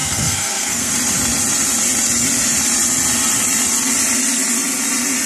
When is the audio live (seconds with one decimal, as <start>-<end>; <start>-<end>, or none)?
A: 0.9-5.3